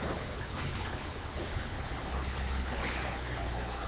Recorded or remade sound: remade